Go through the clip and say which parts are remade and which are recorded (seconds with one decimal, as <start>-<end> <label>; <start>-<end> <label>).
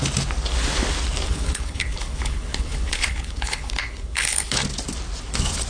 0.0-1.3 recorded; 1.3-4.6 remade; 4.6-5.7 recorded